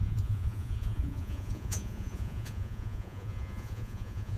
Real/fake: fake